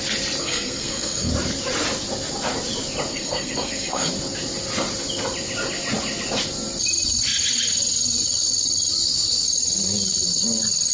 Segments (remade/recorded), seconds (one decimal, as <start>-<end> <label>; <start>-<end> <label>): 0.0-0.4 recorded; 0.4-1.3 remade; 1.3-3.1 recorded; 3.1-4.1 remade; 4.1-10.9 recorded